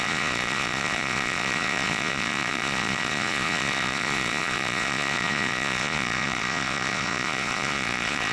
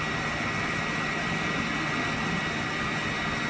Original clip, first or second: second